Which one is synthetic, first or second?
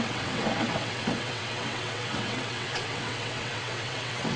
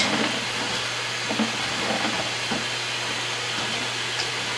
first